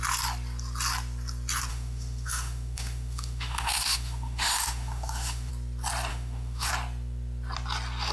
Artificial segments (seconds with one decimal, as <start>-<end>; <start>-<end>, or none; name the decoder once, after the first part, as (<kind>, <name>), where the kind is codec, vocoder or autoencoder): 1.7-5.5 (autoencoder, DAC-VAE); 6.1-6.7